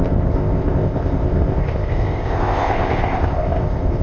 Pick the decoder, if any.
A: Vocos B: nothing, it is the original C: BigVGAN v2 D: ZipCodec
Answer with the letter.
D